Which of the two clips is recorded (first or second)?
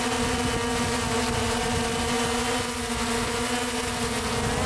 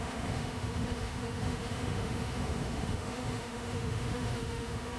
first